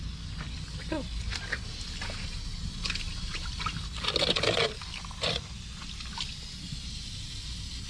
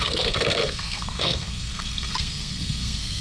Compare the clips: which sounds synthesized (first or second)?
second